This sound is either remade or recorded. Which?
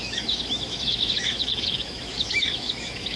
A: remade